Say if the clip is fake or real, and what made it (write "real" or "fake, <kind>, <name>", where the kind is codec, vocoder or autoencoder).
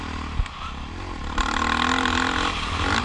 real